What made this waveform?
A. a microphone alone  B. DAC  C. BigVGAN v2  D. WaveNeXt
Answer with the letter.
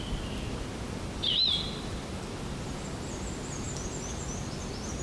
A